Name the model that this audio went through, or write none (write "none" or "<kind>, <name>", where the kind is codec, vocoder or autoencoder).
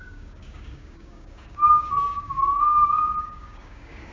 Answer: codec, DAC